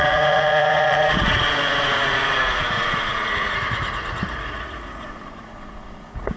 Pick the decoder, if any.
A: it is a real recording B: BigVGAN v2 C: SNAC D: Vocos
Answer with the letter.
D